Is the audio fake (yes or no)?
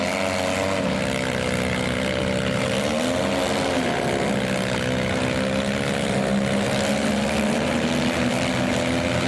no